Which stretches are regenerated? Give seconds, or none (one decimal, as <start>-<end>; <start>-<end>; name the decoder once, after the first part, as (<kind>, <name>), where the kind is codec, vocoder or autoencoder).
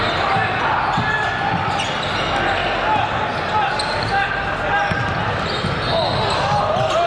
none